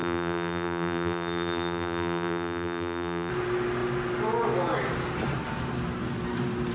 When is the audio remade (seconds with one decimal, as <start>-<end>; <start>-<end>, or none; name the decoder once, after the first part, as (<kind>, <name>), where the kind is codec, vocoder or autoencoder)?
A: 0.0-3.3 (vocoder, BigVGAN v2)